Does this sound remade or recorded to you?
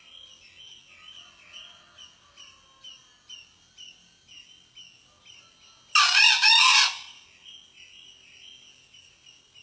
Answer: recorded